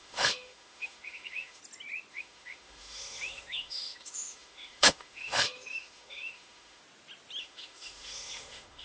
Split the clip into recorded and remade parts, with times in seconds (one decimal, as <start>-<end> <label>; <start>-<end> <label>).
0.0-1.6 remade; 1.6-2.1 recorded; 2.1-6.8 remade; 6.8-7.4 recorded; 7.4-8.8 remade